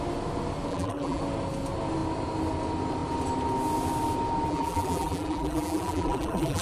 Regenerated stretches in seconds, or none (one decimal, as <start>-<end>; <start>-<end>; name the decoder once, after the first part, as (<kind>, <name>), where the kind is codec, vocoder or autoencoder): 0.7-1.2 (vocoder, BigVGAN v2); 4.5-6.6